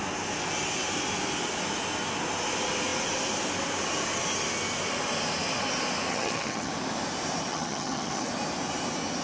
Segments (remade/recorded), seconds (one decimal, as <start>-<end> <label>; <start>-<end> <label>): 0.0-6.1 recorded; 6.1-6.7 remade; 6.7-7.5 recorded; 7.5-8.3 remade; 8.3-9.2 recorded